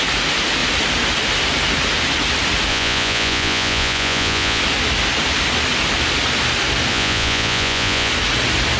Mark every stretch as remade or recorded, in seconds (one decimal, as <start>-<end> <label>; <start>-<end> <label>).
0.0-2.7 recorded; 2.7-4.6 remade; 4.6-6.9 recorded; 6.9-8.1 remade; 8.1-8.8 recorded